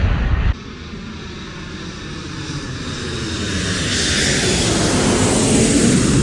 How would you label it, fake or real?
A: real